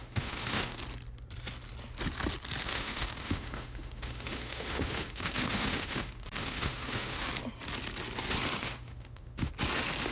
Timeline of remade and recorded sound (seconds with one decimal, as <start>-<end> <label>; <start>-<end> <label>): 0.0-0.8 remade; 0.8-2.6 recorded; 2.6-7.3 remade; 7.3-8.6 recorded; 8.6-9.5 remade; 9.5-10.1 recorded